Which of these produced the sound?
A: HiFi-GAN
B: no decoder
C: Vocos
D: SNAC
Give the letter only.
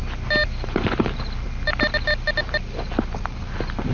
B